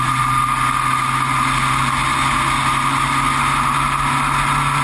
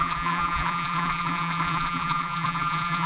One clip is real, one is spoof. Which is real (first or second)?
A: first